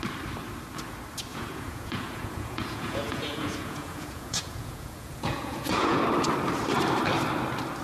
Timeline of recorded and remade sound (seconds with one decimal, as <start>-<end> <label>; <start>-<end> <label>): 0.0-1.3 recorded; 1.3-6.0 remade; 6.0-7.8 recorded